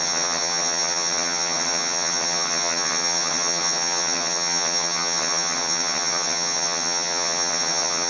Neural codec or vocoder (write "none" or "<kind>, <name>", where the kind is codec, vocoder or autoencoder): vocoder, HiFi-GAN